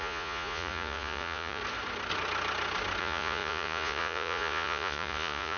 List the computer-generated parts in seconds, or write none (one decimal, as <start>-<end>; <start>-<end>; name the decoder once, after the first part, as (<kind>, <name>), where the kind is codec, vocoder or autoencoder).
0.0-1.6 (vocoder, Vocos); 3.0-5.6